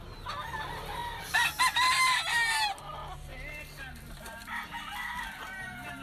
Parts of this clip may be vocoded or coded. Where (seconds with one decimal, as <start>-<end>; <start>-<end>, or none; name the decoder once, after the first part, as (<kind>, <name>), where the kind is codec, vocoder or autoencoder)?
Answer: 3.3-5.4 (vocoder, BigVGAN v2)